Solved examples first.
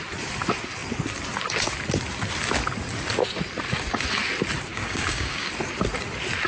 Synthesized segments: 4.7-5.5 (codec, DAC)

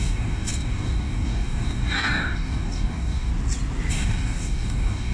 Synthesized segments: 0.0-3.3 (codec, DAC); 3.9-5.1

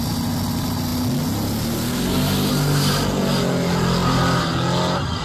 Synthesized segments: none